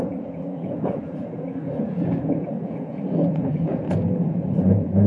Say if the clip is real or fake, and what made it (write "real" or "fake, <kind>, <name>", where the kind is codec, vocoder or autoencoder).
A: fake, vocoder, Vocos